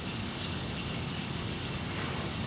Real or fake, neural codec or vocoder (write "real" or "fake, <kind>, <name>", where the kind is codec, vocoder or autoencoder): fake, codec, DAC